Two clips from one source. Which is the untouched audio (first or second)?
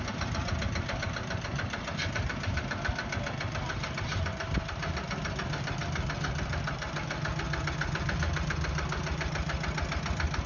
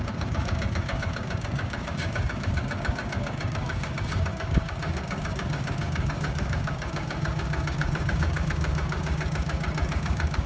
first